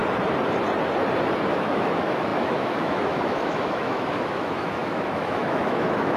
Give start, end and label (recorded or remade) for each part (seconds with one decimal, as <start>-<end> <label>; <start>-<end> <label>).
0.0-1.5 recorded; 1.5-6.2 remade